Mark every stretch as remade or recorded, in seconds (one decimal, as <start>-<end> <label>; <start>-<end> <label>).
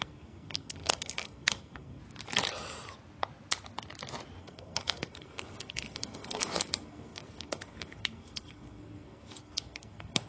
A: 0.0-2.0 remade; 2.0-4.4 recorded; 4.4-10.3 remade